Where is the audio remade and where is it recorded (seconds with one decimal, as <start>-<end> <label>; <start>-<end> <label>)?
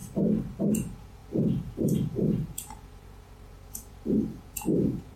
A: 0.0-0.7 recorded; 0.7-5.2 remade